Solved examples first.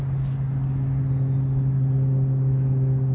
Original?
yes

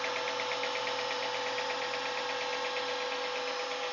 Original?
yes